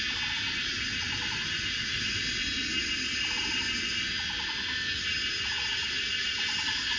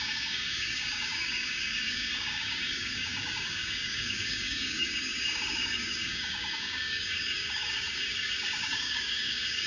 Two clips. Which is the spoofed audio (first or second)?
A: second